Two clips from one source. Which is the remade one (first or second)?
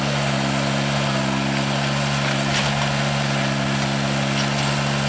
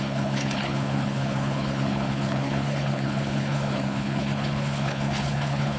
second